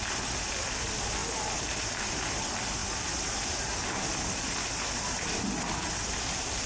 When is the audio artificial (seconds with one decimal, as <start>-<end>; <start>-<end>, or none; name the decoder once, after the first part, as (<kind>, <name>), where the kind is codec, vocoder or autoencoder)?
none